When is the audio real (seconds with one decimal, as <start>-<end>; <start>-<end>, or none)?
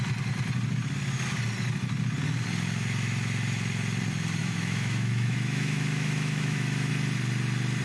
0.0-4.4; 6.9-7.8